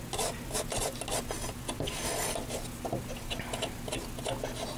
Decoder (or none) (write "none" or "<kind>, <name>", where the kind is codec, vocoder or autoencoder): none